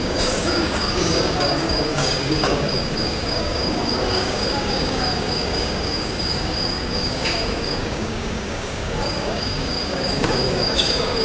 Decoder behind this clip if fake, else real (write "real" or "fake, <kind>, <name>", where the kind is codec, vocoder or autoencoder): fake, codec, DAC